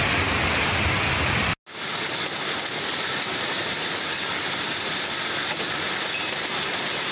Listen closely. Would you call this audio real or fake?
real